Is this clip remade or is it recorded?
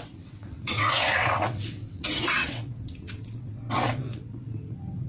remade